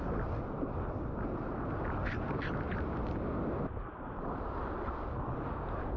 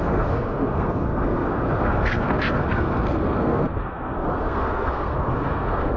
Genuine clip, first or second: first